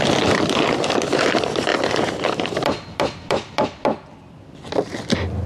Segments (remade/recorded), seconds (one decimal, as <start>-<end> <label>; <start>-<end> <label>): 0.0-5.5 recorded